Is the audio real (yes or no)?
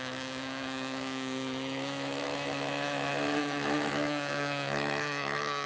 no